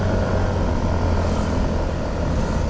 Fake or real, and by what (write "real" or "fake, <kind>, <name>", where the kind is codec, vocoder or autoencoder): real